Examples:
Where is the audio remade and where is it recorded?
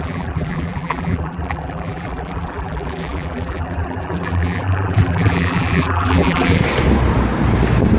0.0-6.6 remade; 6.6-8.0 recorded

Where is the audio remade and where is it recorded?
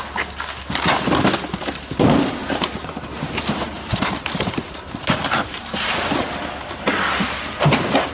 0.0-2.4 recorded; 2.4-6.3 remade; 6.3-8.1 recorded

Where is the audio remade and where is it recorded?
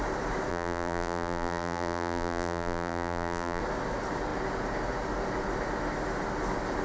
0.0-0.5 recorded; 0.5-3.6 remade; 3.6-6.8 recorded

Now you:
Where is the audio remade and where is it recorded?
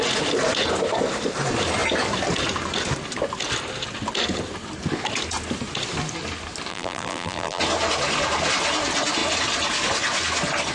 0.0-6.7 recorded; 6.7-7.6 remade; 7.6-10.7 recorded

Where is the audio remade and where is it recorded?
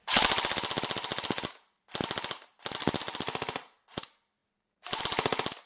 0.0-5.7 recorded